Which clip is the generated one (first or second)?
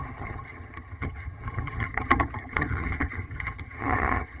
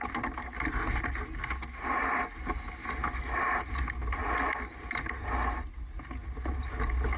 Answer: first